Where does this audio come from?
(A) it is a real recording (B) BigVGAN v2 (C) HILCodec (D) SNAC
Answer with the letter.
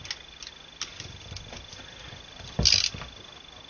A